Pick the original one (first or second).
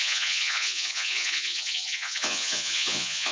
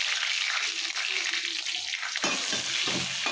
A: second